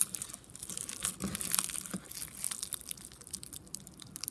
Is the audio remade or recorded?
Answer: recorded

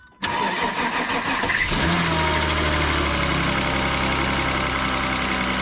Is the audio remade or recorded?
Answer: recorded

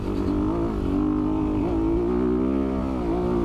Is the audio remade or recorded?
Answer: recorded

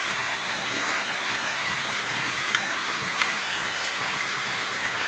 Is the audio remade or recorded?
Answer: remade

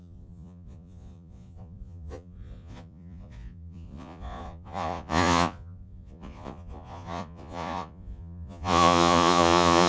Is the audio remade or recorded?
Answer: remade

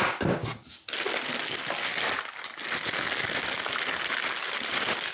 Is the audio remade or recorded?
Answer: recorded